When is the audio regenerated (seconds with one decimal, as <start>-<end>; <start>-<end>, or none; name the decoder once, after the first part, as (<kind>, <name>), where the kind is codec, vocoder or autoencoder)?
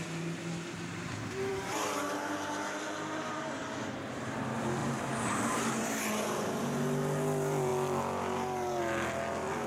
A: 1.5-3.6 (vocoder, BigVGAN v2); 4.8-6.0